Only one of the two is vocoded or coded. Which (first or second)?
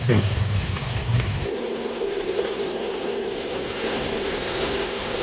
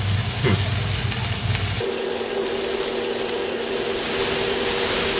first